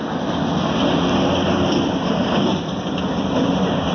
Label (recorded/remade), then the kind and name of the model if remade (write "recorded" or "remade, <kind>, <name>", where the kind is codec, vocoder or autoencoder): recorded